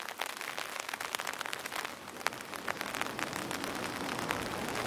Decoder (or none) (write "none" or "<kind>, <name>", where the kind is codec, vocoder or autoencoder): none